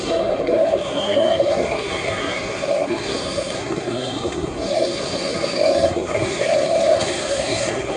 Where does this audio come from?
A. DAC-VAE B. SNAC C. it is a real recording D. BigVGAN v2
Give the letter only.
B